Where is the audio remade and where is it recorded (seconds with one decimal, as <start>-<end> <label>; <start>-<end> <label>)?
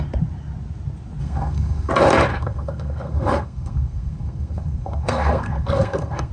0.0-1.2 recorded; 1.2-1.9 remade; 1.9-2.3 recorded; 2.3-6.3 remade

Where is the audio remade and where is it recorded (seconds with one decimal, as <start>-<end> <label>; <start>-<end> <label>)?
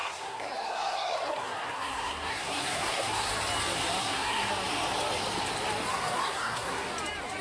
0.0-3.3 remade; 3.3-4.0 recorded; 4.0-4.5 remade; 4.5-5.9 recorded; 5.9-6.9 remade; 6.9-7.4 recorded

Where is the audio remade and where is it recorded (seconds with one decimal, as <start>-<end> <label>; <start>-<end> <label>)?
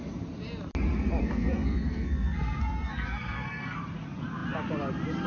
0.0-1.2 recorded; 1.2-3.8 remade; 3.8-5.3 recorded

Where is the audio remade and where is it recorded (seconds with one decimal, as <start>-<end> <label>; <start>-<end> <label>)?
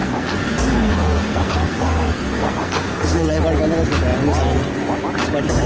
0.0-3.4 remade; 3.4-5.7 recorded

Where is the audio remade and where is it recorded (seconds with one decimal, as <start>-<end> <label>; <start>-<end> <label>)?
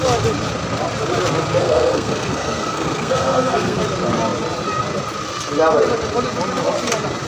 0.0-1.6 recorded; 1.6-3.8 remade; 3.8-7.3 recorded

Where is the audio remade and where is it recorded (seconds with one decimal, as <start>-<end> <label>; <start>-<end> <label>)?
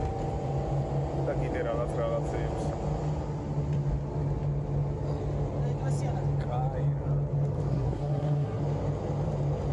0.0-7.7 recorded; 7.7-8.6 remade; 8.6-9.7 recorded